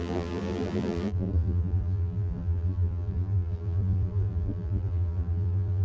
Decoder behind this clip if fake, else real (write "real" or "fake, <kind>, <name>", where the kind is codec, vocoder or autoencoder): fake, vocoder, BigVGAN v2